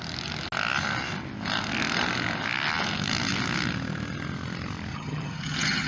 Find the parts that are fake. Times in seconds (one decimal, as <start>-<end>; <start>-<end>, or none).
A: 4.9-5.9